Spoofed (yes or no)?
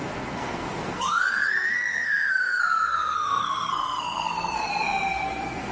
yes